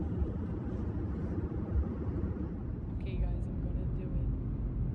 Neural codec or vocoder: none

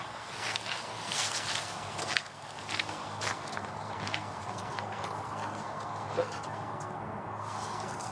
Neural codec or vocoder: codec, SNAC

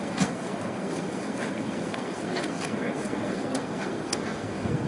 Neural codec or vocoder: codec, SNAC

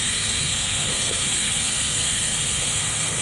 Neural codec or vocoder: codec, SNAC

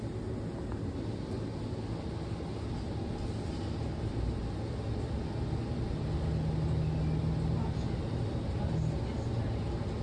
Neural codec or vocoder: none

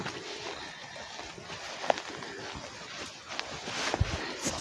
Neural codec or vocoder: none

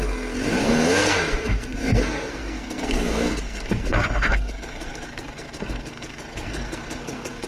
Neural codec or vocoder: codec, SNAC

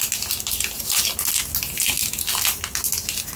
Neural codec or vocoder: none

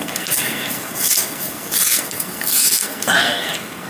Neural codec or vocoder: codec, SNAC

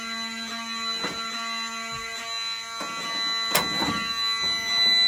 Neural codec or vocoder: none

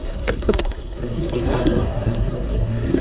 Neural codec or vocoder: codec, SNAC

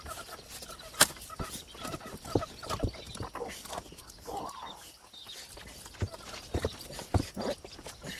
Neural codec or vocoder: none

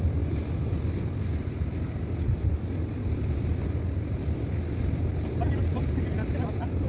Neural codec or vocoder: none